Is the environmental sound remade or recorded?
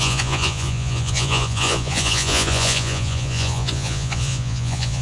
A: remade